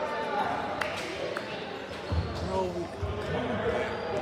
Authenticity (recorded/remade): recorded